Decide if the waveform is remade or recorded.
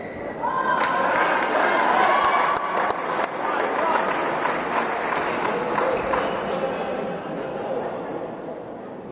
recorded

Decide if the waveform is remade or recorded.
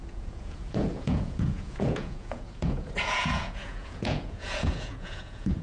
remade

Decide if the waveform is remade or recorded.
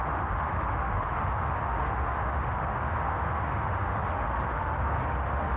remade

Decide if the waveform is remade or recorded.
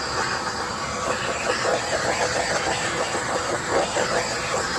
recorded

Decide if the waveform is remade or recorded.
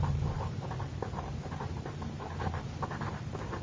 remade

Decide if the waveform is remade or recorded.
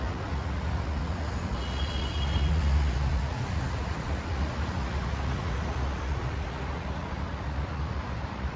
remade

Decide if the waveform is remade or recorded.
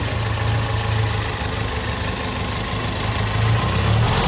recorded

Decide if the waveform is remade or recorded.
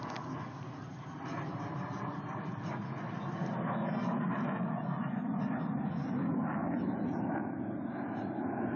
recorded